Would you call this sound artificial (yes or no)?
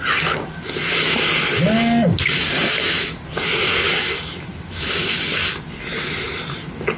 no